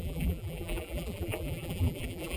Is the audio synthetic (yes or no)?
yes